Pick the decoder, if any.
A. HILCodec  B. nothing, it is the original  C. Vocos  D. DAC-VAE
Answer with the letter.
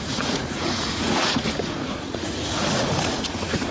C